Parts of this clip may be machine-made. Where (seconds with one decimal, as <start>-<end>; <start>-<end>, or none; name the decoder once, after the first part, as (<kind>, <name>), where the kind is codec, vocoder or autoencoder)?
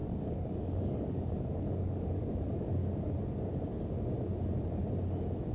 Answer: 0.0-2.8 (codec, DAC)